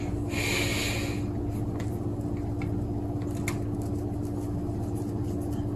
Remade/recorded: recorded